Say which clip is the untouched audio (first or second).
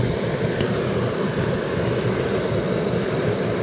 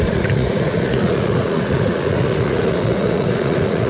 first